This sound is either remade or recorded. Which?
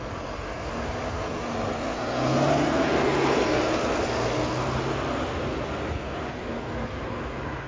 recorded